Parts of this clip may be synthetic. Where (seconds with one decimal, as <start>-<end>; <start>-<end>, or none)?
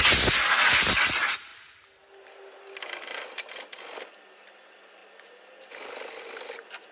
none